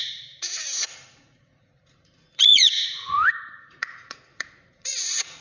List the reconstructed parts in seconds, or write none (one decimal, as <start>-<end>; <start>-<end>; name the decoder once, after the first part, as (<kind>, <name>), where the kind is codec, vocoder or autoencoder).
0.0-5.4 (vocoder, Vocos)